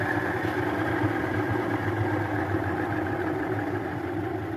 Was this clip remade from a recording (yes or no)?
no